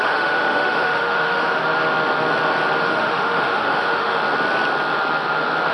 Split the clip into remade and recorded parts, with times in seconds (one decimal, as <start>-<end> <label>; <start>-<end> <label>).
0.0-1.6 remade; 1.6-2.8 recorded; 2.8-4.2 remade; 4.2-5.7 recorded